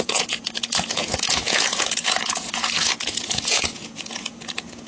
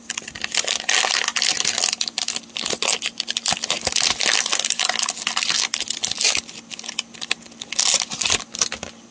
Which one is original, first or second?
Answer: second